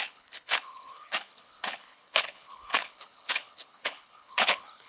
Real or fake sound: fake